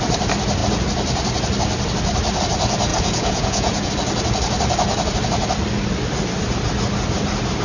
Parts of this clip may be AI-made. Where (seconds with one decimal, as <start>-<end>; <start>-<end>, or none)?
2.9-3.9